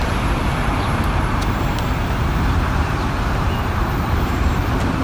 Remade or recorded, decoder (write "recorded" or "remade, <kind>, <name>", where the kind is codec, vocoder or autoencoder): remade, vocoder, BigVGAN v2